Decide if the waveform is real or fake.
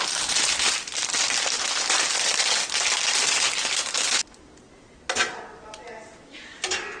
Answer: real